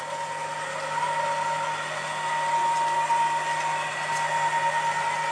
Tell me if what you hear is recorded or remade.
recorded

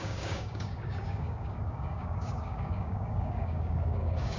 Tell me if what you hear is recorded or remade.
remade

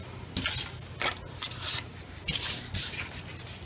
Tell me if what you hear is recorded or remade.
recorded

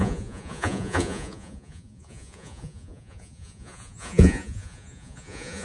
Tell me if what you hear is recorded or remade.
remade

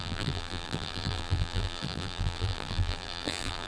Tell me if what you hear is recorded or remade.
remade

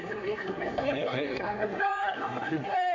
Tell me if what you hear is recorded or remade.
remade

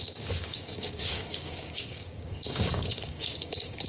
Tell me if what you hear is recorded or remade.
remade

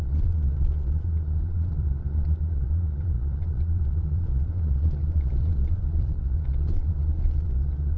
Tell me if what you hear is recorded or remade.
remade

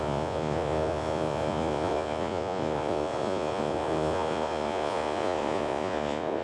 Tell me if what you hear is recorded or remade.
remade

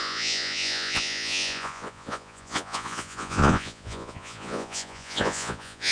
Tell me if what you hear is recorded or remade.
remade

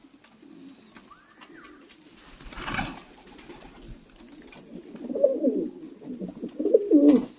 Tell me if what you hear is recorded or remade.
recorded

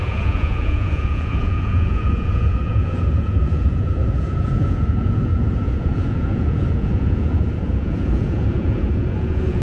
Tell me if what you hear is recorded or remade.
remade